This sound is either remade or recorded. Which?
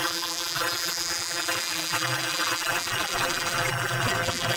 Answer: remade